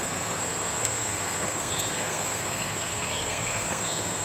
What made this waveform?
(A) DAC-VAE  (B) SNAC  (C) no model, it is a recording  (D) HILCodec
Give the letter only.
B